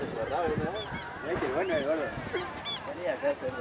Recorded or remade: recorded